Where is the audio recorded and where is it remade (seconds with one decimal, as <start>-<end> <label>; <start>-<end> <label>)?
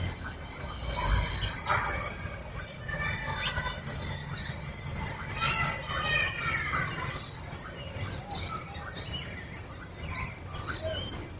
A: 0.0-11.4 recorded